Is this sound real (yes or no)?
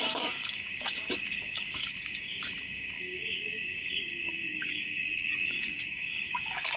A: no